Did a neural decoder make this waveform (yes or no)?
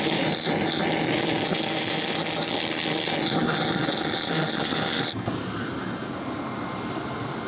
no